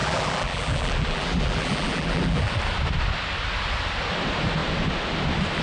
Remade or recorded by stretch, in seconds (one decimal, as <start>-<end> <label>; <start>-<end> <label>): 0.0-2.5 remade; 2.5-5.6 recorded